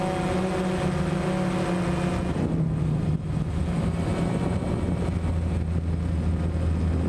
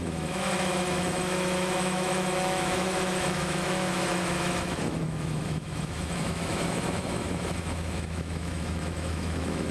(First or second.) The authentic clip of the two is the first